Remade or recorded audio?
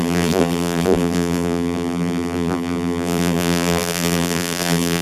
remade